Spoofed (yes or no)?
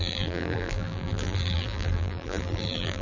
yes